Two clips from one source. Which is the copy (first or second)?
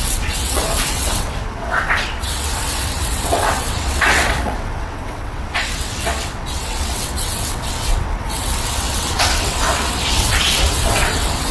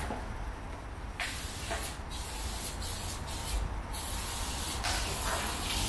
first